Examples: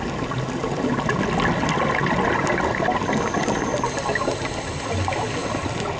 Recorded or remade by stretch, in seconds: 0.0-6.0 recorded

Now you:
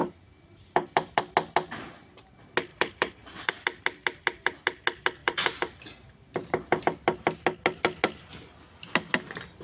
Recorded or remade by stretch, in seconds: 0.0-1.2 remade; 1.2-2.7 recorded; 2.7-3.5 remade; 3.5-5.2 recorded; 5.2-6.8 remade; 6.8-9.6 recorded

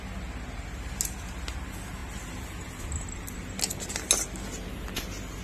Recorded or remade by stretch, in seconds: 0.0-5.4 recorded

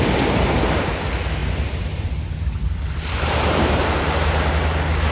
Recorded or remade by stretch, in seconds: 0.0-1.4 recorded; 1.4-4.5 remade; 4.5-5.1 recorded

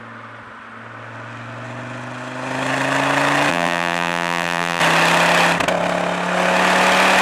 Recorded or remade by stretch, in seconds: 0.0-3.5 recorded; 3.5-4.8 remade; 4.8-7.2 recorded